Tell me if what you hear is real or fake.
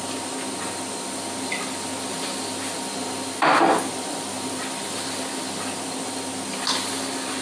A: real